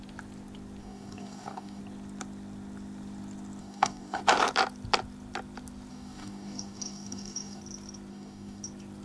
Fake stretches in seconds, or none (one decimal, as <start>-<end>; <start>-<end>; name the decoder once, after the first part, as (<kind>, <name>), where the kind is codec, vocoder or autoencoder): 0.8-1.8 (codec, DAC); 3.6-4.2; 5.9-7.6; 8.1-8.6